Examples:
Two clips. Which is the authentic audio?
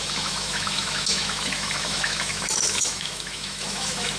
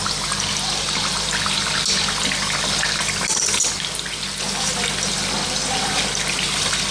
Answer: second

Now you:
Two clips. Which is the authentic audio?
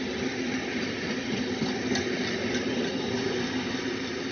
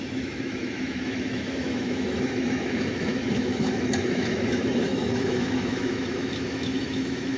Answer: first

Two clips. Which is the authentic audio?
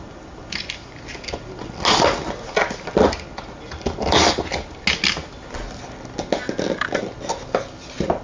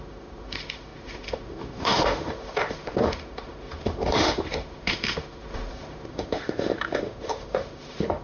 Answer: first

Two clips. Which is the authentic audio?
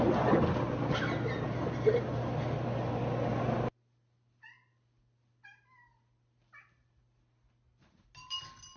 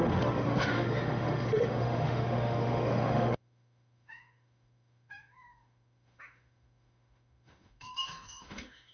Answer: first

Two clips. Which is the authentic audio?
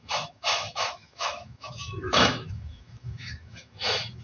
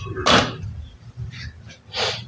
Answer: second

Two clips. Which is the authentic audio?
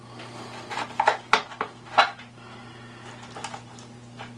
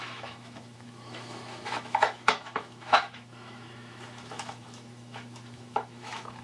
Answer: first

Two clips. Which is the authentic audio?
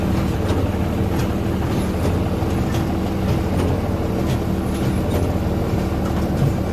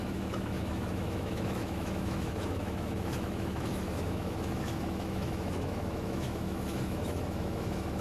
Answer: first